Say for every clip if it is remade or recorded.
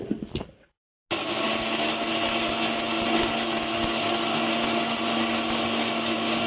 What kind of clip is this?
recorded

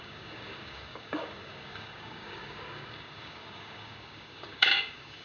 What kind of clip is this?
remade